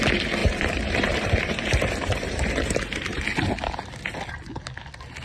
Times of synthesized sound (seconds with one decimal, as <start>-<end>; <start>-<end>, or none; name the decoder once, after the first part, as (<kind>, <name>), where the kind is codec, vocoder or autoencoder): 0.4-3.2 (vocoder, BigVGAN v2)